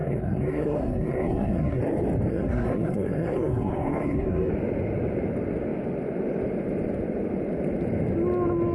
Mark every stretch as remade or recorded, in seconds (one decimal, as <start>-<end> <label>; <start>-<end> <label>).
0.0-1.8 remade; 1.8-2.3 recorded; 2.3-4.5 remade; 4.5-8.7 recorded